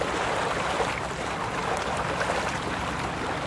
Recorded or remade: recorded